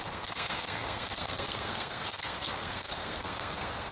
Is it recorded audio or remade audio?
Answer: remade